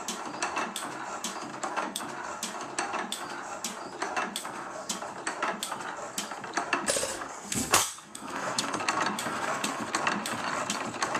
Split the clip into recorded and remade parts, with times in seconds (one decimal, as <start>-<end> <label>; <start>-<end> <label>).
0.0-1.5 recorded; 1.5-2.0 remade; 2.0-4.4 recorded; 4.4-4.9 remade; 4.9-7.1 recorded; 7.1-8.8 remade; 8.8-9.3 recorded; 9.3-9.9 remade; 9.9-11.2 recorded